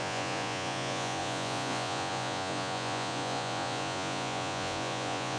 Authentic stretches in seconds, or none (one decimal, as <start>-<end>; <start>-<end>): none